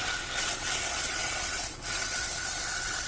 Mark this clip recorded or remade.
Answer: remade